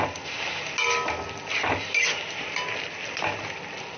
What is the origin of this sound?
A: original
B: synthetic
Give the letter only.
A